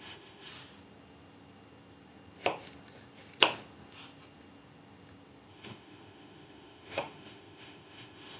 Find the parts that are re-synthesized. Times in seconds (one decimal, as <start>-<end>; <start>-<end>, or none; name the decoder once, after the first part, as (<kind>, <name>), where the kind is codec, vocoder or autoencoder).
0.0-0.5 (autoencoder, DAC-VAE); 5.5-8.4